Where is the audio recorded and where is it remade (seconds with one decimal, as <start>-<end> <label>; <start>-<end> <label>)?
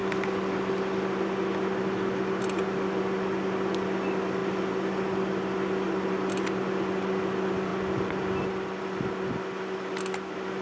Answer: 0.0-10.6 recorded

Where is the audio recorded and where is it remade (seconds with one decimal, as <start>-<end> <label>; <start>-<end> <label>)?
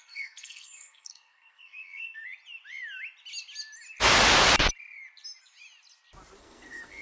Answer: 0.0-2.2 remade; 2.2-6.4 recorded; 6.4-7.0 remade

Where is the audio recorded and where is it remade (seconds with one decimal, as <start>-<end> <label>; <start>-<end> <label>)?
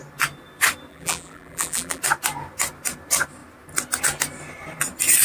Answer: 0.0-0.9 recorded; 0.9-2.0 remade; 2.0-5.2 recorded